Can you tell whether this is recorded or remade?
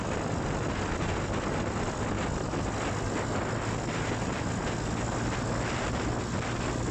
recorded